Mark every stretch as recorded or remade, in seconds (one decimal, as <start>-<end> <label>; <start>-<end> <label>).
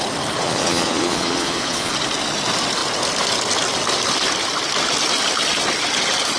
0.0-0.4 recorded; 0.4-1.9 remade; 1.9-6.4 recorded